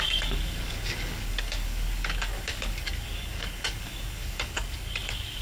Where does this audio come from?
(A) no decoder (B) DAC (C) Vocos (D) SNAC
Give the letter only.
B